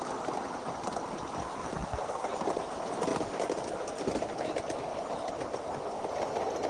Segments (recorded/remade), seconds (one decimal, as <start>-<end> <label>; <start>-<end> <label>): 0.0-1.4 recorded; 1.4-2.3 remade; 2.3-6.7 recorded